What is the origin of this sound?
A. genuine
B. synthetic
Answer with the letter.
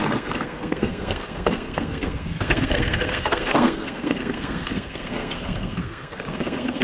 B